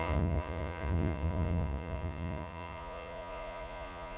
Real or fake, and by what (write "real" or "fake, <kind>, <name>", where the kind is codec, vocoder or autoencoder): fake, vocoder, Vocos